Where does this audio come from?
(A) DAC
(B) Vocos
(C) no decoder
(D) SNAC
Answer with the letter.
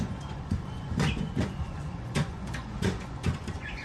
B